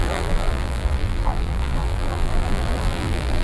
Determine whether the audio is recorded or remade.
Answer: remade